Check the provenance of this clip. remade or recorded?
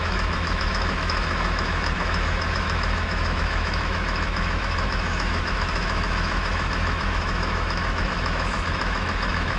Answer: remade